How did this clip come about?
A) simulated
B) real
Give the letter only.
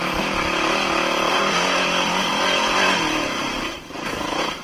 B